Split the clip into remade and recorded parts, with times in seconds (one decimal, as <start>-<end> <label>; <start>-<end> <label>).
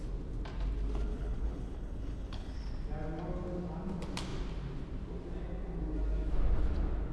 0.0-1.1 recorded; 1.1-2.7 remade; 2.7-7.1 recorded